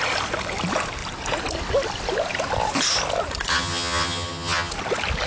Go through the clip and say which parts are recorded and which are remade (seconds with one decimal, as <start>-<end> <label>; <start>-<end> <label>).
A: 0.0-3.5 recorded; 3.5-4.7 remade; 4.7-5.3 recorded